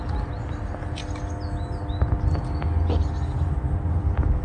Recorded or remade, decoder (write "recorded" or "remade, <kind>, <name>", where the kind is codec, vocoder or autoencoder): recorded